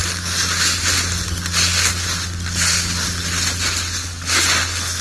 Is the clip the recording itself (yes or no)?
yes